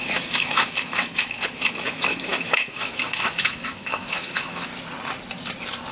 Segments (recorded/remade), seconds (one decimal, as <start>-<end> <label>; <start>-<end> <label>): 0.0-4.7 remade; 4.7-5.9 recorded